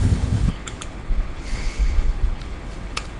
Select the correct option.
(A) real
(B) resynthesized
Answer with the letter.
B